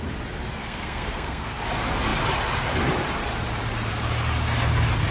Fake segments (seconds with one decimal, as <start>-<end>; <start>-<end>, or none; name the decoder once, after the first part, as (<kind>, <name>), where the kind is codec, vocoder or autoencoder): 0.6-1.6 (codec, SNAC)